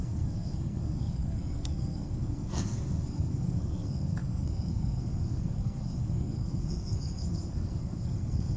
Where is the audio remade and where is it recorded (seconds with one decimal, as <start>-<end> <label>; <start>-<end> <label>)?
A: 0.0-8.6 remade